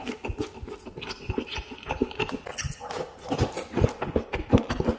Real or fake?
real